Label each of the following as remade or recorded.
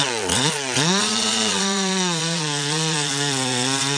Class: remade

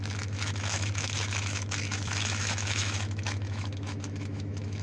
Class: remade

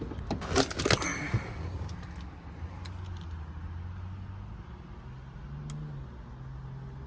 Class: recorded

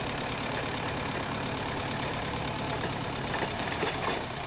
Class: remade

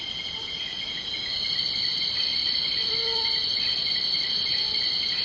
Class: recorded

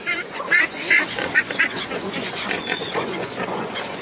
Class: remade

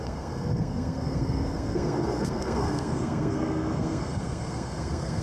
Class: remade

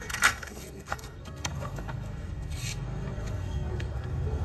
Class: remade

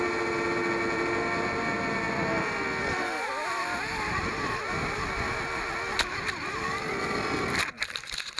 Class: recorded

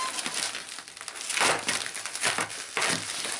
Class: recorded